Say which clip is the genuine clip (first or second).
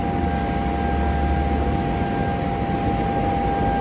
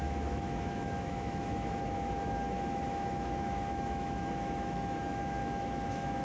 first